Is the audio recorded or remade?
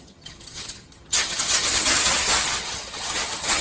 remade